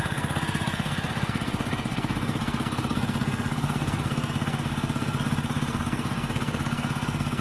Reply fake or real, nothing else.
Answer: fake